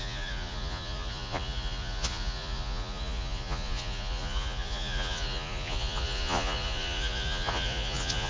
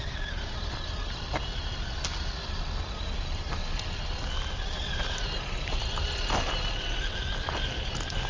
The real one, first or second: second